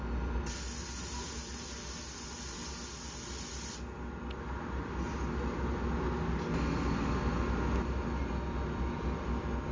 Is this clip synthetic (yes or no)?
no